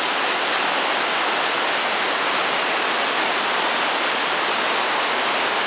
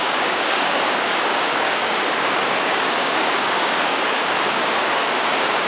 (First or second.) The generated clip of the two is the second